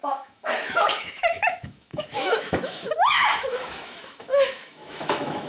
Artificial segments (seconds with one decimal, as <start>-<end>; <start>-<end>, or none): 0.0-5.5